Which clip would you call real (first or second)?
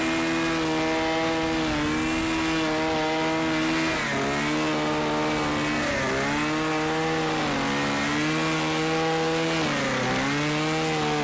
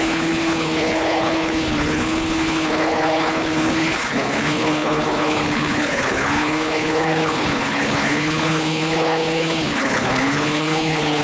first